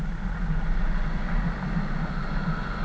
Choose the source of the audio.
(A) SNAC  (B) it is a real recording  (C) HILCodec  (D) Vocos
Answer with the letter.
B